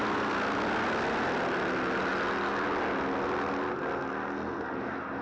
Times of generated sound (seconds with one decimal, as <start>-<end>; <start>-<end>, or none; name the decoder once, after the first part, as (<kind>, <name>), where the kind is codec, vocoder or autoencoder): none